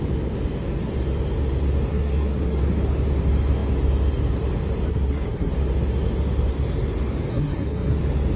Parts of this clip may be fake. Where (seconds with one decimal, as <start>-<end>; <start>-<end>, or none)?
1.9-2.6; 4.9-5.5; 7.3-8.0

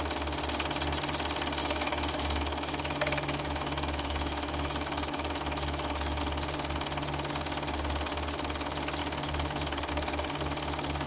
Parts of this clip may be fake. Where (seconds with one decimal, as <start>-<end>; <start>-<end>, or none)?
1.6-6.2